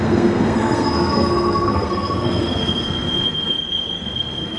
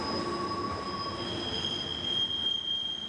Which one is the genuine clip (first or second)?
second